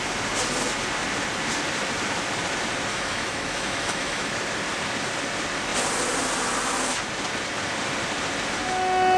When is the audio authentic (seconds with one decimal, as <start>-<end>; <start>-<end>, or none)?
0.0-2.9; 4.3-9.2